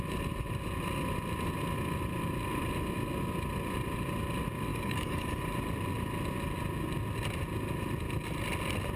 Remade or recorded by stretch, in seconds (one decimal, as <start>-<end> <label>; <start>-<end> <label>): 0.0-4.7 recorded; 4.7-5.4 remade; 5.4-9.0 recorded